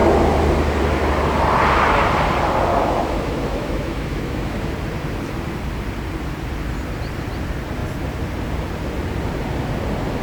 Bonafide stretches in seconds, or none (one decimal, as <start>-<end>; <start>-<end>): 0.0-2.7; 4.7-10.2